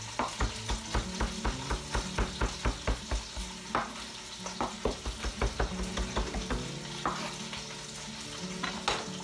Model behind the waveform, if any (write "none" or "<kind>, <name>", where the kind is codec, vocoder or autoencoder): none